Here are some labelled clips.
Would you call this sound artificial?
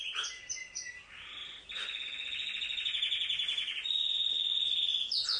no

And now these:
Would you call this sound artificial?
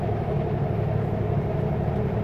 no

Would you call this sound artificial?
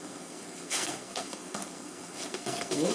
yes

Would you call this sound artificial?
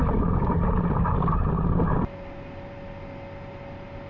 no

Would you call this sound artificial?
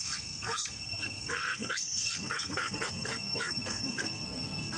yes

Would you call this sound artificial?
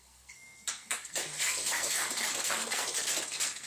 yes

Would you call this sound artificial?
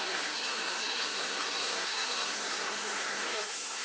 yes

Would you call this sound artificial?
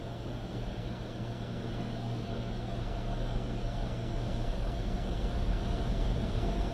yes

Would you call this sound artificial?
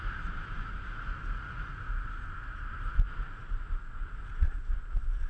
no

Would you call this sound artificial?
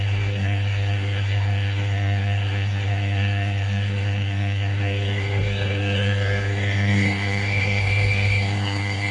yes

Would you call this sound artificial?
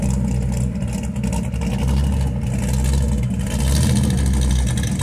no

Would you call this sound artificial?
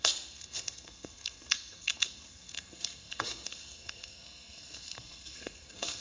yes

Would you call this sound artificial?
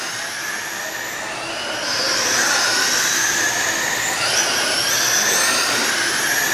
no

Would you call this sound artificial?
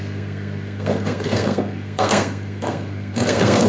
yes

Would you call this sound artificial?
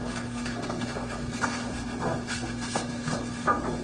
yes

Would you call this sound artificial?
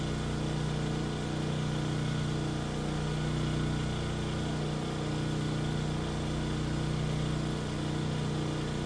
no